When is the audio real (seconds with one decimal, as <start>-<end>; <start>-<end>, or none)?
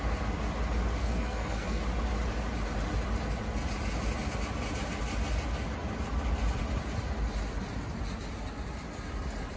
0.0-1.0; 1.8-9.6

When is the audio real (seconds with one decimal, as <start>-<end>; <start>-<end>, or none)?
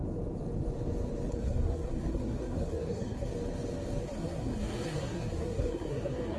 0.0-1.3; 3.3-4.0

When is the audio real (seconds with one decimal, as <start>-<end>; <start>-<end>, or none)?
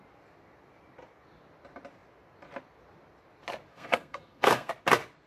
0.0-3.7; 4.7-5.3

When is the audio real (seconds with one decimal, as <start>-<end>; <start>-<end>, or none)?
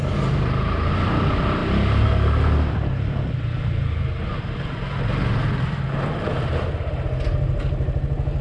0.0-8.4